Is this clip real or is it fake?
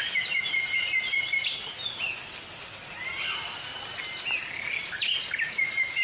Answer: real